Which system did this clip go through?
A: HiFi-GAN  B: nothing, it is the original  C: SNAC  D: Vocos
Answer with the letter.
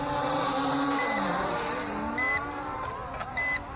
B